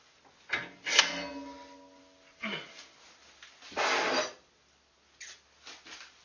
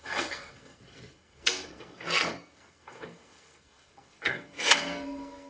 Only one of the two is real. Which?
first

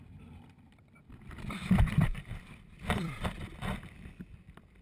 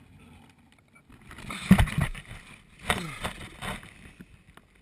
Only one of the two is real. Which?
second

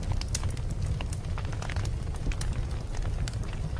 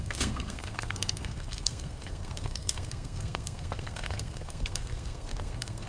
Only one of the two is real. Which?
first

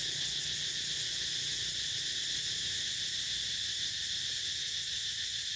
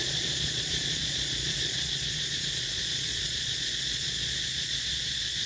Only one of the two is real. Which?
first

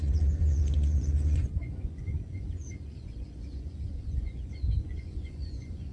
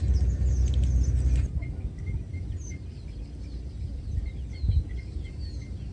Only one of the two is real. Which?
second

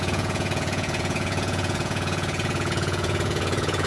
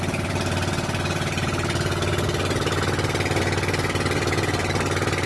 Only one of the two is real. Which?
second